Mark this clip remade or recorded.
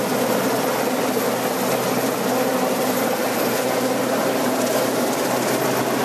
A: recorded